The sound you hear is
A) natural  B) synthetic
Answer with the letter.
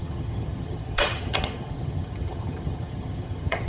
B